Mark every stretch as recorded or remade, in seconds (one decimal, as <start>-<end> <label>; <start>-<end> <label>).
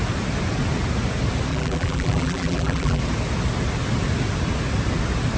0.0-1.5 recorded; 1.5-3.0 remade; 3.0-5.4 recorded